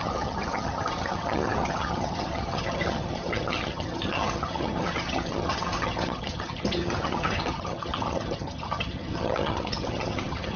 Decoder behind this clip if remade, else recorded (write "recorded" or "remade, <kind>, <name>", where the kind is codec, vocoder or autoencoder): remade, vocoder, HiFi-GAN